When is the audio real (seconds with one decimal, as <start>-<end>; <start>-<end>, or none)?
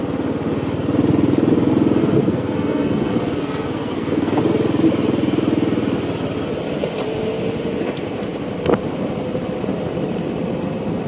0.0-2.0; 4.4-11.1